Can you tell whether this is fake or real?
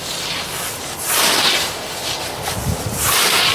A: real